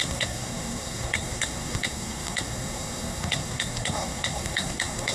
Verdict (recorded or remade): remade